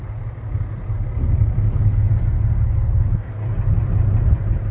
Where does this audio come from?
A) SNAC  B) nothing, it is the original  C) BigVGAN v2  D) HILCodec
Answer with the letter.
B